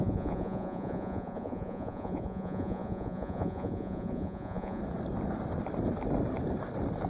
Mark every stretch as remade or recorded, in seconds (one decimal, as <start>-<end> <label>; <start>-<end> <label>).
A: 0.0-4.8 remade; 4.8-7.1 recorded